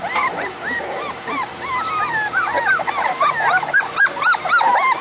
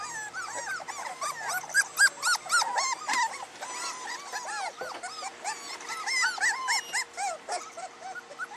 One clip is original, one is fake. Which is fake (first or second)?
first